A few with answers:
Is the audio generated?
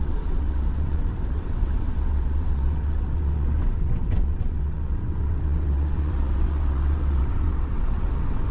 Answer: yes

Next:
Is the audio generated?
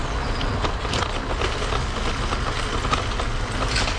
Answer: no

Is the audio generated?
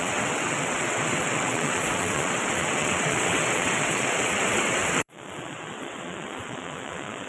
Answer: yes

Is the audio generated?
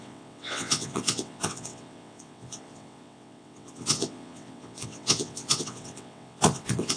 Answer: yes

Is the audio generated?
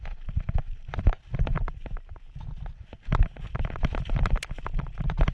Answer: no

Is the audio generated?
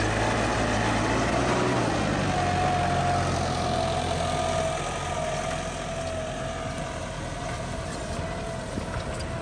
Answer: no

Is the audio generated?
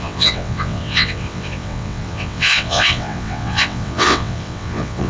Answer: yes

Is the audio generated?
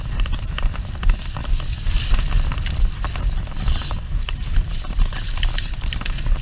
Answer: no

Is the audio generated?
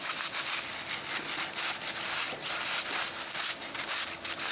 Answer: no